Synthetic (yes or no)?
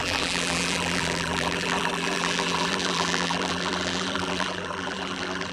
yes